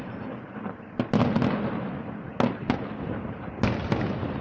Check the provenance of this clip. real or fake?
real